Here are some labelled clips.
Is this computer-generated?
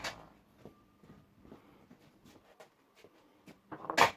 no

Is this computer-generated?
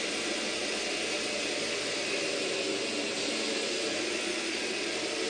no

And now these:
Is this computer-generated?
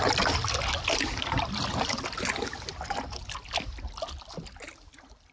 no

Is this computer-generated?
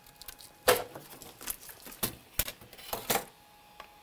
no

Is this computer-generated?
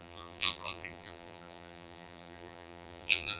yes